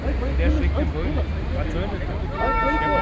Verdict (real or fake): real